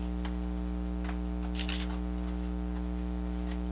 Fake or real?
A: real